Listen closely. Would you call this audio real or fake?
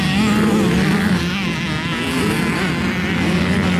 real